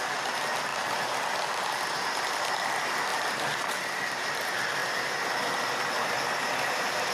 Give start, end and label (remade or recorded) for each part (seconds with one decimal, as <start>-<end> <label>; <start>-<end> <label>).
0.0-7.1 recorded